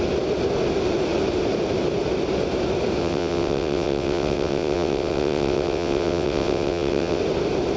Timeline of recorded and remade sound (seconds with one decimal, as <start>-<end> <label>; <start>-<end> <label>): 0.0-3.0 recorded; 3.0-7.2 remade; 7.2-7.8 recorded